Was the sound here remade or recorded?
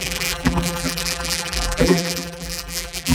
remade